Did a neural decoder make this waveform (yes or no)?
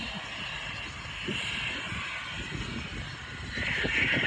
no